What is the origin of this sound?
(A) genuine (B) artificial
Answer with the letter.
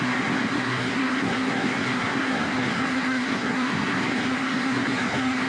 B